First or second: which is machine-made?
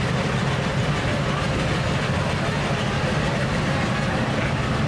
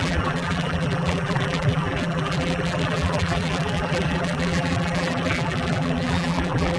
second